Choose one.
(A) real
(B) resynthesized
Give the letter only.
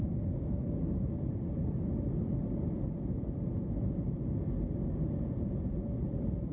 A